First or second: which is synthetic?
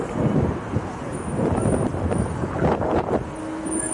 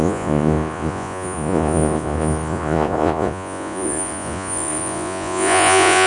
second